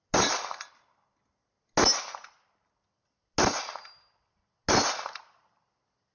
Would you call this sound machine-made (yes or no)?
no